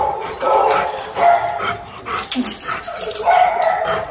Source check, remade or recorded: recorded